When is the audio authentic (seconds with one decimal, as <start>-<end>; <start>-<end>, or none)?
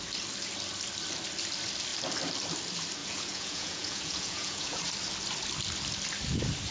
0.0-3.0; 4.8-6.7